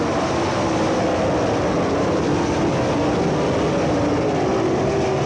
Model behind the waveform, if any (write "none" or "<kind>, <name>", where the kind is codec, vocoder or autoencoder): none